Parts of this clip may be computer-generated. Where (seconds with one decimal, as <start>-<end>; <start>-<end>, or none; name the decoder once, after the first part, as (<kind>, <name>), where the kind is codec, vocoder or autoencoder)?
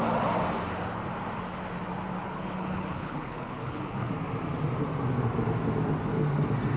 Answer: 2.2-4.1 (codec, HILCodec)